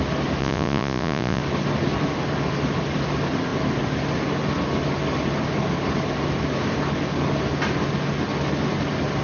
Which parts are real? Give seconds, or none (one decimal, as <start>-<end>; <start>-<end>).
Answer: 0.0-0.4; 1.4-9.2